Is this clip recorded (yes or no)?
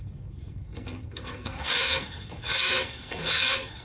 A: no